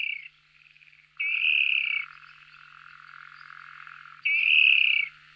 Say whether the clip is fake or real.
real